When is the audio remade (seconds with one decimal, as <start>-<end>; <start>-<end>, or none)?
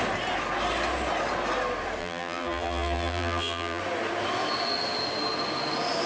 2.0-3.8